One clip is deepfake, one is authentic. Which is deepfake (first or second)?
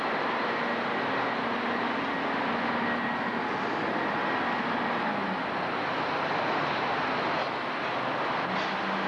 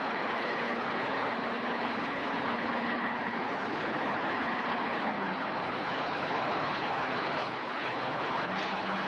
second